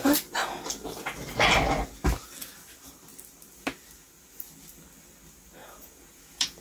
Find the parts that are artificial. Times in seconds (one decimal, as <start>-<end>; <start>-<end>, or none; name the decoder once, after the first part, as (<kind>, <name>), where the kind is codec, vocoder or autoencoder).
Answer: 5.6-6.6 (vocoder, Vocos)